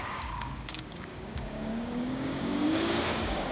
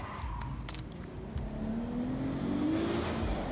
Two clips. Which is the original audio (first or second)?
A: second